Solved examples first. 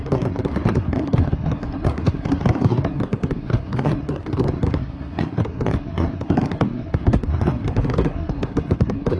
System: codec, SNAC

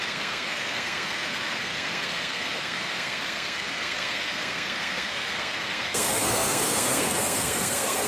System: codec, SNAC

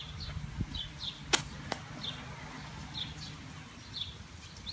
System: none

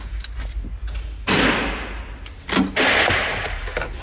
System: none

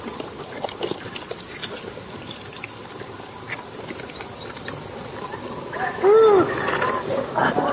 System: none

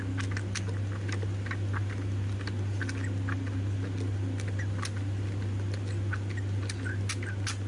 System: none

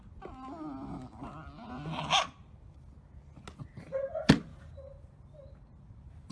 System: none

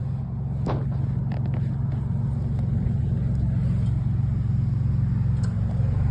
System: none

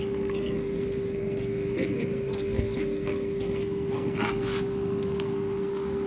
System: codec, SNAC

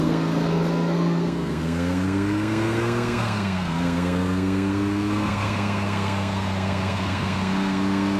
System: codec, SNAC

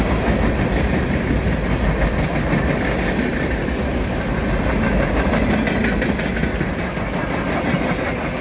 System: none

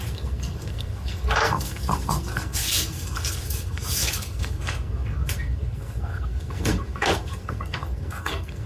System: codec, SNAC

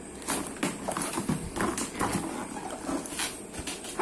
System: none